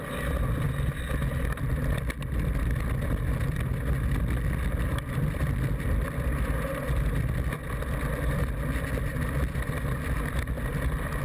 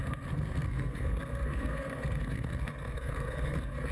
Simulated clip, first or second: second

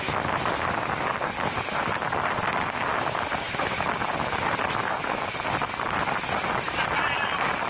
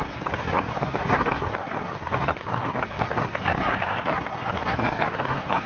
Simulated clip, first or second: second